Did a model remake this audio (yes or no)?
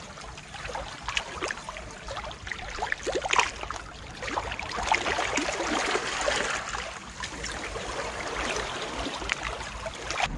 no